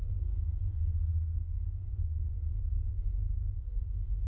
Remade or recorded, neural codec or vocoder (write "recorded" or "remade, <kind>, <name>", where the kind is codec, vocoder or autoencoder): remade, codec, SNAC